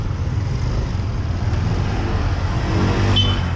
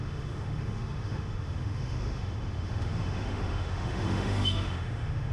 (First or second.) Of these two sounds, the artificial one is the second